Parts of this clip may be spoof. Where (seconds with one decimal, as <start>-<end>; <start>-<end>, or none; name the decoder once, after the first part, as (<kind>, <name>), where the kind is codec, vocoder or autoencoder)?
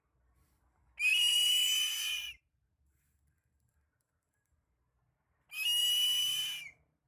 1.1-4.5 (vocoder, BigVGAN v2); 5.8-6.4